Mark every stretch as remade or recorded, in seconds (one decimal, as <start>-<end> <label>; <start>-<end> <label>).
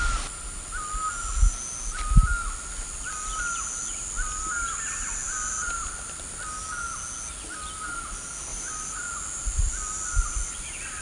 0.0-8.5 recorded; 8.5-9.0 remade; 9.0-11.0 recorded